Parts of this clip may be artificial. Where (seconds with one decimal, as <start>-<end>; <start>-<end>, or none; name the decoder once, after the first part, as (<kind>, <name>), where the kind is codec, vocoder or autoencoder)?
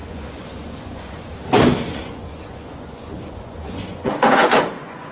0.0-1.3 (vocoder, Vocos); 1.9-5.1